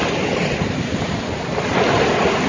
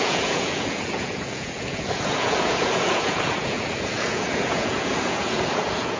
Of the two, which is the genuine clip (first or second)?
first